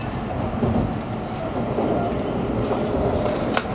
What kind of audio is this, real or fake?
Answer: real